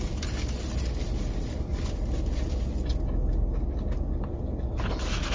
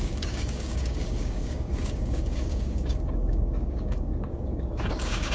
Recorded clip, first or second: first